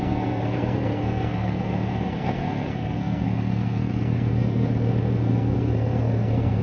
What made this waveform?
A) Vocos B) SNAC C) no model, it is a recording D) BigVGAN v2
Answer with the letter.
B